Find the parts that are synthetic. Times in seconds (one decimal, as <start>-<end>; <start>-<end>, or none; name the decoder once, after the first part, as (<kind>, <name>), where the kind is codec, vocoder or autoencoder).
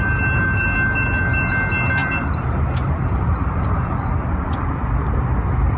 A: 2.0-5.8 (vocoder, BigVGAN v2)